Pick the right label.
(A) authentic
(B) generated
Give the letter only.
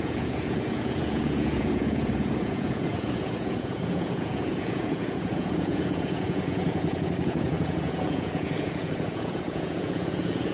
B